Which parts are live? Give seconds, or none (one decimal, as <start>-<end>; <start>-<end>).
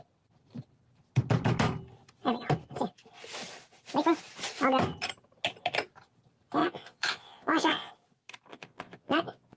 0.0-6.6; 7.9-8.5